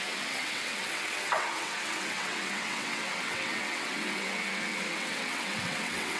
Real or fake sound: fake